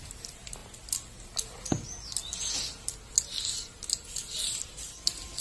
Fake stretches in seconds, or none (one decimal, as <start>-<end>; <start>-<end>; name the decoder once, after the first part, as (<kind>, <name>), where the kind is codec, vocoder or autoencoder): none